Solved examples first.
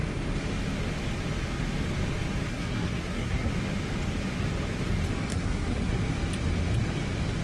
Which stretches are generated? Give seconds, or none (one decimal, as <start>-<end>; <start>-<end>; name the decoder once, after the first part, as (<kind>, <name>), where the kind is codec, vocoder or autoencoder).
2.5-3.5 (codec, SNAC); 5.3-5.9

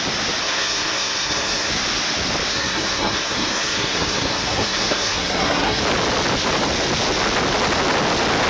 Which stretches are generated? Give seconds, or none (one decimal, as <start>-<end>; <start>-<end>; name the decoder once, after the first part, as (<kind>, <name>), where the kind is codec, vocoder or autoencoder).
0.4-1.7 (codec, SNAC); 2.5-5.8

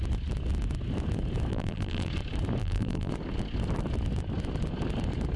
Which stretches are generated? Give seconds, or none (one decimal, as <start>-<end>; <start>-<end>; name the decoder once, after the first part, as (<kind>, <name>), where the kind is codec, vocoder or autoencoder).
1.5-2.1 (vocoder, BigVGAN v2); 2.6-3.1